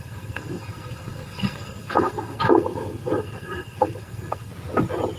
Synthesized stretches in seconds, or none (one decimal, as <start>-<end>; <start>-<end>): 0.0-4.5

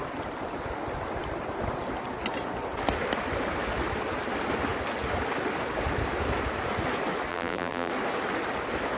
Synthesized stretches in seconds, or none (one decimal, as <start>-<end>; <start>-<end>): 7.3-7.9

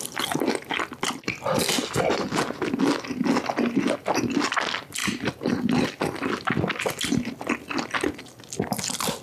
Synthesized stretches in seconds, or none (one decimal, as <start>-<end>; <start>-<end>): none